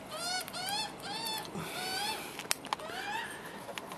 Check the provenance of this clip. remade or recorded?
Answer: recorded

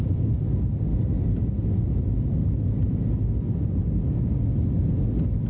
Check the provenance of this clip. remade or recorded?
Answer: recorded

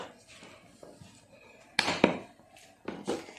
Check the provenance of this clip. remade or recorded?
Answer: recorded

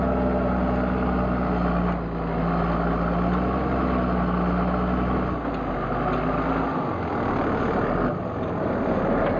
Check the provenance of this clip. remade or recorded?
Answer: recorded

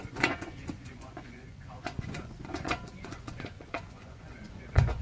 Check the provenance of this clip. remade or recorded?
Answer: remade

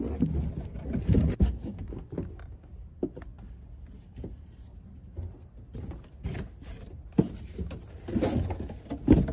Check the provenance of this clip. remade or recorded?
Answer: recorded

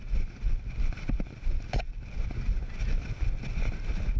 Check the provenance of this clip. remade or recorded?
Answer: recorded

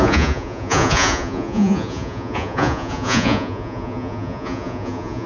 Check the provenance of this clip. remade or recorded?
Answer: remade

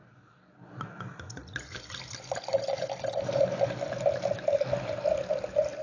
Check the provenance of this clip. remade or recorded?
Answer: recorded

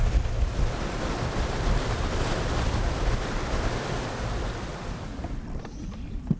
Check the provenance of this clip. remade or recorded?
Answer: recorded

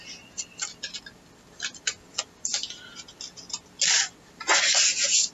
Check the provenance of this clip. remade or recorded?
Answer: recorded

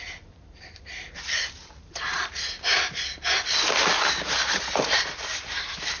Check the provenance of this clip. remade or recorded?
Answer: recorded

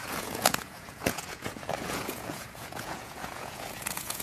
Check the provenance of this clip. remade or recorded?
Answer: remade